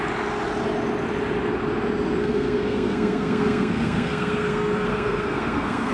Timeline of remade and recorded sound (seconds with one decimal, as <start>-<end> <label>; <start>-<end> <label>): 0.0-2.2 recorded; 2.2-5.9 remade